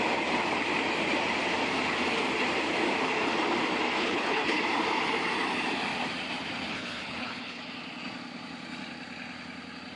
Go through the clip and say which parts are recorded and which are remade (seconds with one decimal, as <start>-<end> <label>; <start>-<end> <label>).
0.0-4.0 recorded; 4.0-4.6 remade; 4.6-6.7 recorded; 6.7-7.6 remade; 7.6-10.0 recorded